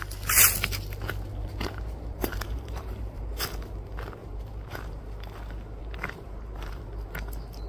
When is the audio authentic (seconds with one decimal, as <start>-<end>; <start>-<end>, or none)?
0.0-1.4; 3.4-4.2; 5.0-5.8; 6.8-7.7